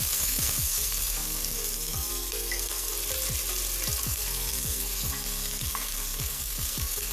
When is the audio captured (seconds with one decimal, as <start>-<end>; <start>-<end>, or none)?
2.9-4.0